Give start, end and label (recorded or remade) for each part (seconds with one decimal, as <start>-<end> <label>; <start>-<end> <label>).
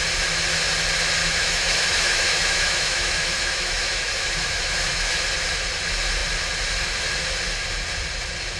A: 0.0-1.2 recorded; 1.2-5.1 remade; 5.1-8.6 recorded